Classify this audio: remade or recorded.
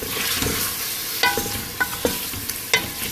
recorded